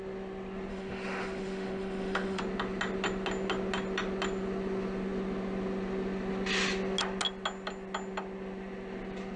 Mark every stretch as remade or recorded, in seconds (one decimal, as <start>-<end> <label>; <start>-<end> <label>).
0.0-0.7 recorded; 0.7-2.4 remade; 2.4-9.4 recorded